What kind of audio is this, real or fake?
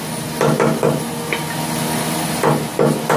real